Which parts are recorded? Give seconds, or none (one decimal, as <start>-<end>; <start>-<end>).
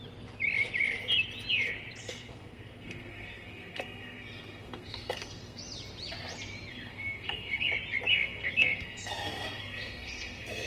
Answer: 0.0-2.0; 5.6-6.7; 7.7-8.1